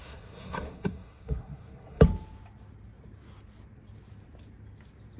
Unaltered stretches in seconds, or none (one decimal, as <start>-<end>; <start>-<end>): 2.0-5.2